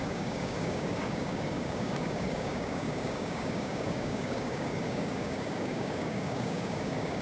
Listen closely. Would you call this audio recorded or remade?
remade